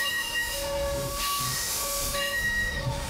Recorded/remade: remade